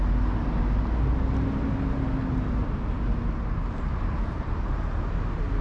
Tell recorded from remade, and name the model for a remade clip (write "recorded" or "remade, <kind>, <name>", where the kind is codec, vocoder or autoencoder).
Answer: recorded